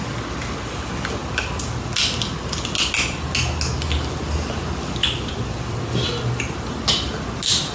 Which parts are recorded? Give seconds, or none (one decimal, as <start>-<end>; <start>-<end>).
0.0-5.0; 5.8-7.7